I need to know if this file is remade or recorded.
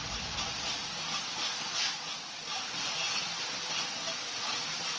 recorded